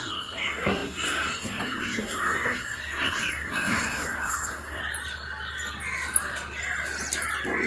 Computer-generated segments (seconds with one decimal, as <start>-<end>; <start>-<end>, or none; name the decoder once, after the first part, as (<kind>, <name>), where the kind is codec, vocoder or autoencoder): 0.0-4.8 (codec, SNAC)